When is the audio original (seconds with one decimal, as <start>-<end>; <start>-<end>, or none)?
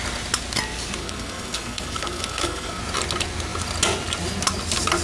0.0-1.0; 2.8-5.0